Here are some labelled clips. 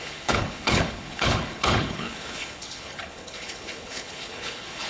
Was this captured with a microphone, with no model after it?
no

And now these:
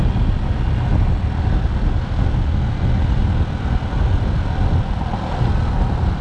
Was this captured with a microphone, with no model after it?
yes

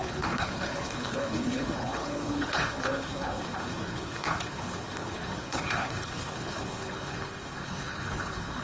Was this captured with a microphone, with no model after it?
no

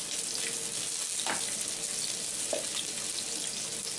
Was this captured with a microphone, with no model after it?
yes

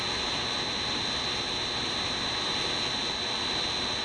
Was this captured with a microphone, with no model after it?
yes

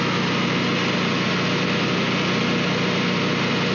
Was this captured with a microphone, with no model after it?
yes